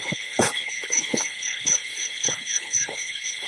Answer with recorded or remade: remade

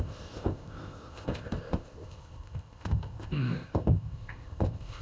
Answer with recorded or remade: remade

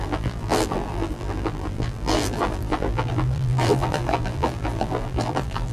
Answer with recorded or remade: remade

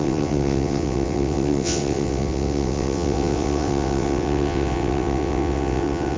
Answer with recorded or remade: remade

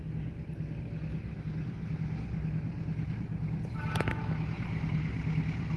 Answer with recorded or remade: recorded